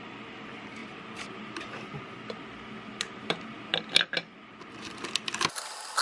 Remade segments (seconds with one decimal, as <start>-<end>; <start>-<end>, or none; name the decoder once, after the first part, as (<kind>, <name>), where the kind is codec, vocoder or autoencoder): none